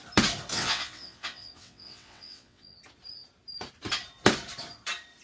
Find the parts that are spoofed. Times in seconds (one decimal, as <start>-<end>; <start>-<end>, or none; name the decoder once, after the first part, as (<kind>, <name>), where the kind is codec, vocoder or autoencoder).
0.5-2.8 (vocoder, WaveNeXt)

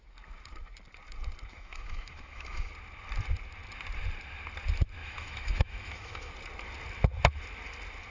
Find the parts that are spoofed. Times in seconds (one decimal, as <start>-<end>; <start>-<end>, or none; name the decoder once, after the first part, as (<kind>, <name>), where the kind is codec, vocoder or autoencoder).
1.5-2.7 (autoencoder, DAC-VAE); 5.0-6.3

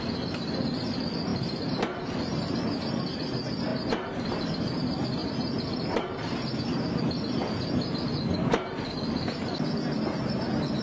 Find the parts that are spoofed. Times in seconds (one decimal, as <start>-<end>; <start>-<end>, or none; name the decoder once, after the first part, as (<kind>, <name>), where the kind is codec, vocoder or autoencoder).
1.3-2.4 (vocoder, BigVGAN v2); 3.7-4.4; 5.2-6.4

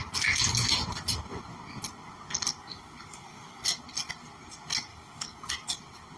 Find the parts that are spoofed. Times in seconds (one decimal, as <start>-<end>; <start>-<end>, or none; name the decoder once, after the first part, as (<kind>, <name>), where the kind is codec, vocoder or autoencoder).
2.6-3.8 (codec, DAC); 4.9-5.8

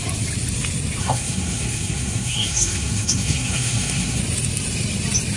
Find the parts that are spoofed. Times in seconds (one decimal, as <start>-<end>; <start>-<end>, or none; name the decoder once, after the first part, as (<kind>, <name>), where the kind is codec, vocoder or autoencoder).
1.0-4.2 (codec, SNAC)

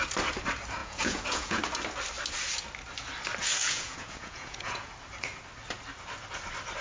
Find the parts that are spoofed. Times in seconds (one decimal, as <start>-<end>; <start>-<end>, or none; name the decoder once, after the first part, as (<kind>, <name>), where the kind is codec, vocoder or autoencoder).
0.8-1.6 (vocoder, Vocos); 3.6-4.9